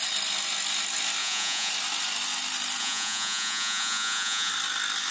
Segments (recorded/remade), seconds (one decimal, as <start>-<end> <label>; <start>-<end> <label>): 0.0-1.2 recorded; 1.2-1.7 remade; 1.7-2.8 recorded; 2.8-4.5 remade; 4.5-5.1 recorded